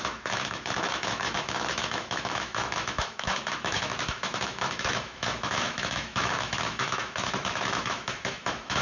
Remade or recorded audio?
remade